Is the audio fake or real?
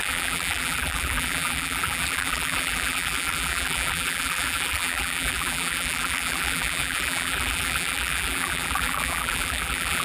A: fake